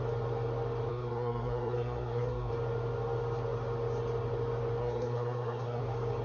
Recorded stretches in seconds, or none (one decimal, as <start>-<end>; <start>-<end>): 0.0-0.9; 2.5-4.8; 5.8-6.2